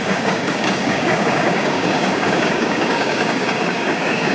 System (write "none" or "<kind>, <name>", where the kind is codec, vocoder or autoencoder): codec, DAC